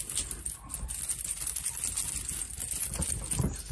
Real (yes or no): yes